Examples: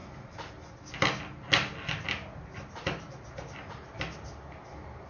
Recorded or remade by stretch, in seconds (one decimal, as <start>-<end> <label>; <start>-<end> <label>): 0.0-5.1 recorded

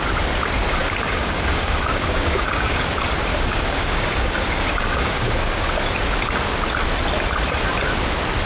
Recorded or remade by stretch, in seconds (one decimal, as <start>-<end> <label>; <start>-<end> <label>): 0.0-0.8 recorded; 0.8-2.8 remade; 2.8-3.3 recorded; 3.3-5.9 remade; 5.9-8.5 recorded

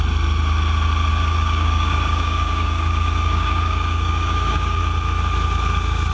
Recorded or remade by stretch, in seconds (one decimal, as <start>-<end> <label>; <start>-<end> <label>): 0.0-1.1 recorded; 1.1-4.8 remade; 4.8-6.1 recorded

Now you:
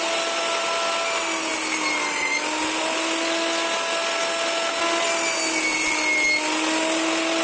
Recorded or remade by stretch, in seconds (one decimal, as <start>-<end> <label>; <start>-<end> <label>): 0.0-7.4 recorded